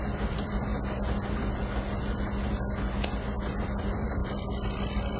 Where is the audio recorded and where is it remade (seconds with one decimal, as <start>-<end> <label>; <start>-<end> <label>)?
0.0-0.7 remade; 0.7-3.8 recorded; 3.8-5.2 remade